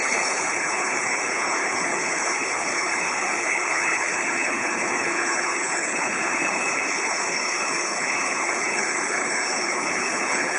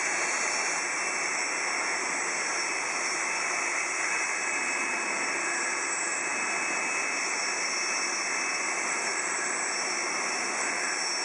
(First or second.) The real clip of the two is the second